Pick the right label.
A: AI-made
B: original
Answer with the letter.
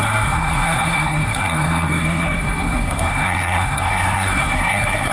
A